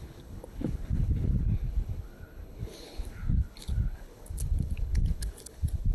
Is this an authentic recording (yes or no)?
no